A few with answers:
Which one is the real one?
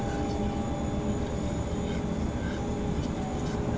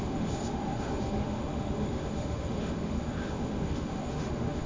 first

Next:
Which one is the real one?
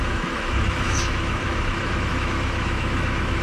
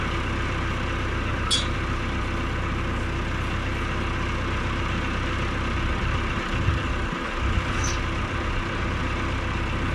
second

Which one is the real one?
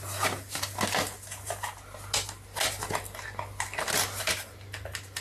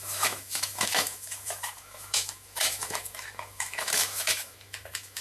first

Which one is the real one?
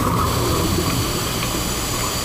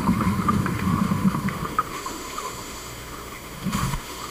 first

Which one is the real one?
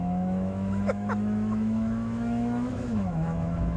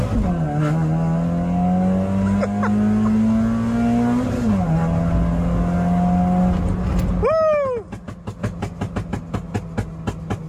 second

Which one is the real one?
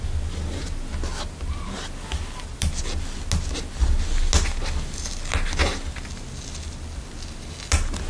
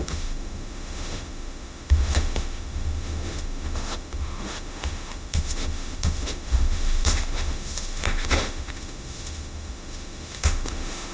first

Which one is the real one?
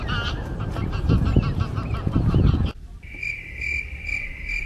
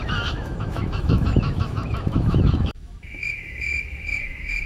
first